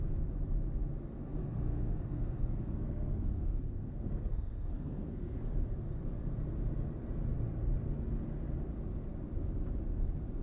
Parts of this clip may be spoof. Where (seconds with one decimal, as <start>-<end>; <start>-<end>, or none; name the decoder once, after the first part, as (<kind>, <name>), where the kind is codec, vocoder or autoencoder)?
1.4-5.4 (codec, SNAC)